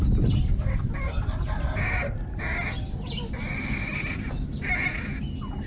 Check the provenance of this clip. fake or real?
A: real